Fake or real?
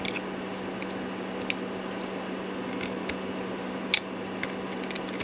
real